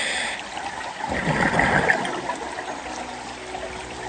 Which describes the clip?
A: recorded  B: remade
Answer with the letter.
A